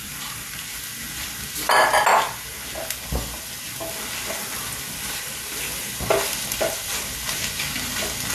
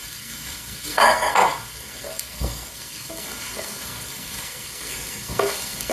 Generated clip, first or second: second